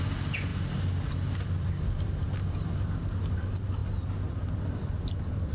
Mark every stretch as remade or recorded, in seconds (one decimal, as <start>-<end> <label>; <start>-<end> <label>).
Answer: 0.0-5.5 recorded